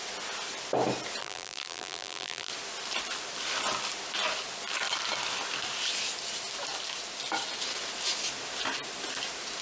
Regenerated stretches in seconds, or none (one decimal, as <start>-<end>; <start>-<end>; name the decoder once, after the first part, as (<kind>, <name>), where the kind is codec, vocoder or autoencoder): 1.2-2.5 (vocoder, BigVGAN v2)